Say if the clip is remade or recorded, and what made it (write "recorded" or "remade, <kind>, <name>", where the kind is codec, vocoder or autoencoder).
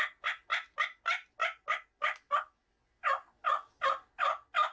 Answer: recorded